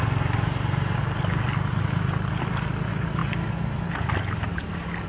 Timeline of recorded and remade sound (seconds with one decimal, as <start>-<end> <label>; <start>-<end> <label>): 0.0-5.1 recorded